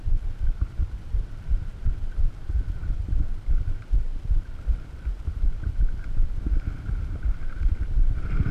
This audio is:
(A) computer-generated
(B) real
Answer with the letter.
B